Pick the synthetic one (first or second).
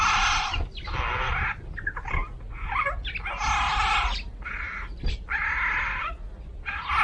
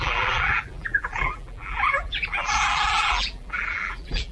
second